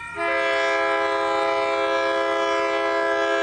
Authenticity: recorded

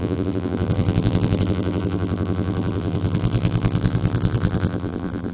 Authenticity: remade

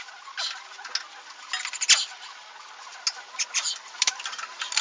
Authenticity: recorded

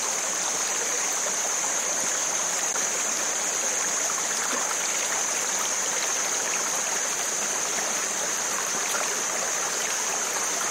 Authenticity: recorded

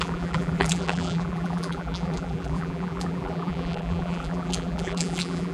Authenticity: remade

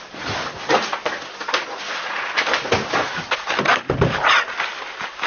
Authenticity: recorded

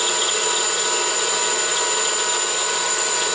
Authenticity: recorded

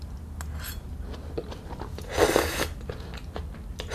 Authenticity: recorded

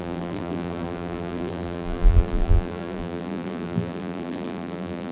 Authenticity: remade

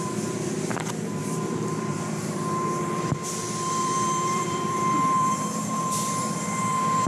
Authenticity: remade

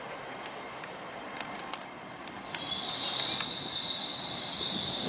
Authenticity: recorded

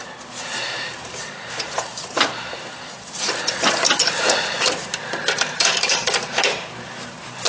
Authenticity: remade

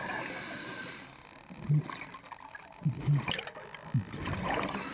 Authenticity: recorded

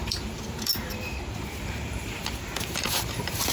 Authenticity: remade